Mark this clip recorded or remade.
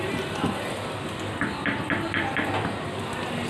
recorded